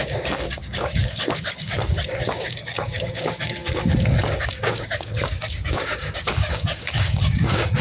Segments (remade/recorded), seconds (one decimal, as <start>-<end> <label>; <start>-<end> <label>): 0.0-7.8 remade